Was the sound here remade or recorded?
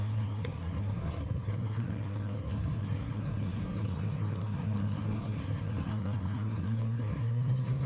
remade